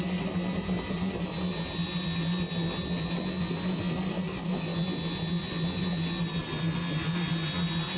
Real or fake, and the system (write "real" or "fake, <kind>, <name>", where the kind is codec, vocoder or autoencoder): real